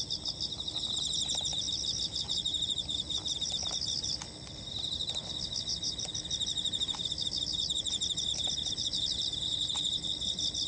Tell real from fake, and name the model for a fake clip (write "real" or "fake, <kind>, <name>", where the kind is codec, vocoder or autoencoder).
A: real